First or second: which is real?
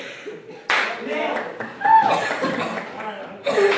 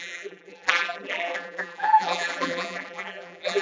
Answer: first